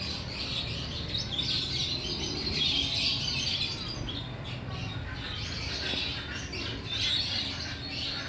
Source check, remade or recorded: recorded